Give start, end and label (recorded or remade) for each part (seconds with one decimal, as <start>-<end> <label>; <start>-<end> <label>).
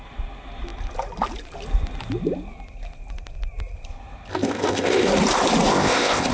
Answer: 0.0-4.3 recorded; 4.3-5.1 remade; 5.1-5.7 recorded; 5.7-6.3 remade